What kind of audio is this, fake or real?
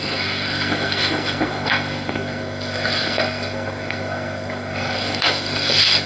fake